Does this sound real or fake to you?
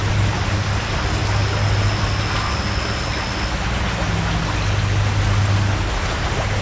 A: real